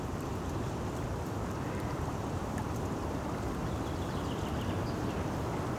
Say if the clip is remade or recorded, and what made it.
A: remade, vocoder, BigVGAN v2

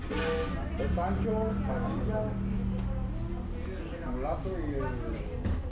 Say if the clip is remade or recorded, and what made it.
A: recorded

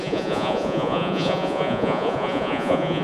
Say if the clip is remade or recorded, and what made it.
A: remade, vocoder, Vocos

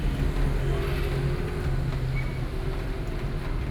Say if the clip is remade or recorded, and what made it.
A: recorded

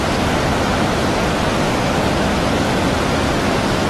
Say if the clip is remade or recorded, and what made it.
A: recorded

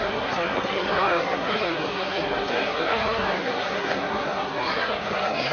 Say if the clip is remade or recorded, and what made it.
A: remade, codec, SNAC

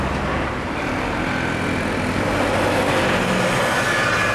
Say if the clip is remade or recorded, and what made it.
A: recorded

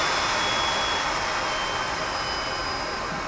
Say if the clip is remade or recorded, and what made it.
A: recorded